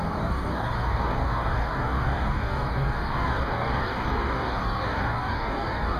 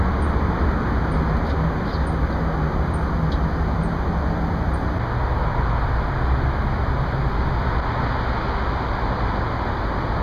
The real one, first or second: second